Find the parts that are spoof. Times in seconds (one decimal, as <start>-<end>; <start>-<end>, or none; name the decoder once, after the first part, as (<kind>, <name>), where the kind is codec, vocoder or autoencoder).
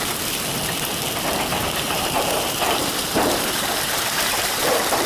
1.5-4.6 (vocoder, BigVGAN v2)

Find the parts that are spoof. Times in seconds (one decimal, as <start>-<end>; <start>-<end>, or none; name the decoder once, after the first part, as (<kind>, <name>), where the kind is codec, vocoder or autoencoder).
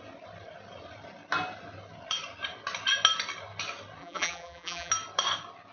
4.0-4.9 (vocoder, BigVGAN v2)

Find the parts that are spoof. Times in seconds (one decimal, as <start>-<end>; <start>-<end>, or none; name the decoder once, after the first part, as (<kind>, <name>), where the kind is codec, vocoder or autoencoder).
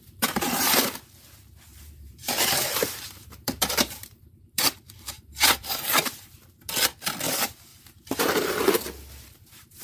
0.0-0.8 (vocoder, BigVGAN v2); 1.7-5.9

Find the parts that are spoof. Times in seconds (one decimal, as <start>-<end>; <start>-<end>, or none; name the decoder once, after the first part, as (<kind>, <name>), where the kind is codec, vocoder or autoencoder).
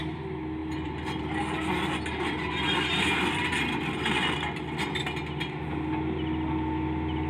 0.6-4.1 (vocoder, BigVGAN v2)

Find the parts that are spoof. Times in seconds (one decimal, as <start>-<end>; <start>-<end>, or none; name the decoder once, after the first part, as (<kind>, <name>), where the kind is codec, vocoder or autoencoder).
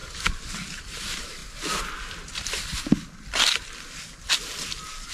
0.0-1.4 (vocoder, BigVGAN v2); 4.3-5.1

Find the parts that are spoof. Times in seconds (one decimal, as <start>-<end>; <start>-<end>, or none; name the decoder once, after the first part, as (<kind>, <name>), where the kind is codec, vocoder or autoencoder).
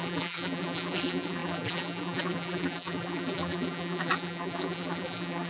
0.0-5.5 (vocoder, BigVGAN v2)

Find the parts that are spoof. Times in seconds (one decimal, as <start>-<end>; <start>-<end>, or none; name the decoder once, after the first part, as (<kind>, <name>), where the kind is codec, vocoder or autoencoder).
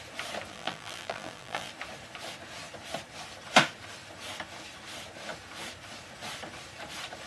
0.5-1.7 (vocoder, BigVGAN v2)